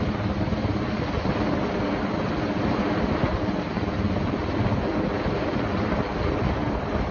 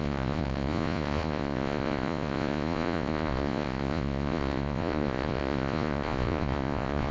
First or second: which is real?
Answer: first